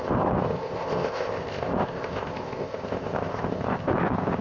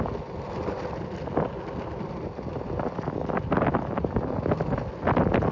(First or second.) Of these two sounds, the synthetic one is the first